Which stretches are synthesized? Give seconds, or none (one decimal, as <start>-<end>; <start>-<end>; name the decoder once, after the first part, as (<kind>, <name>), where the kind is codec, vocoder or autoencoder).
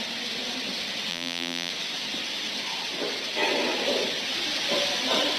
1.1-1.7 (vocoder, BigVGAN v2)